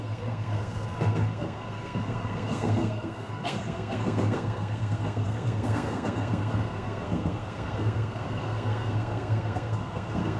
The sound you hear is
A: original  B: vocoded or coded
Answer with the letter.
B